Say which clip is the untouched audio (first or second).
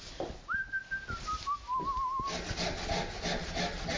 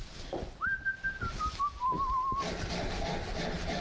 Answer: first